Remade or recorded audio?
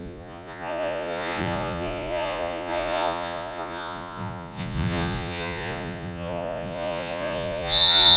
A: remade